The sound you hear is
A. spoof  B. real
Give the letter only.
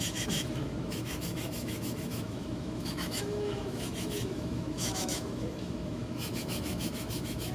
A